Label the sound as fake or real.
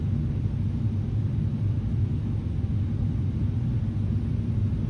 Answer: real